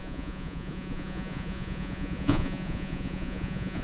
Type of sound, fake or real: fake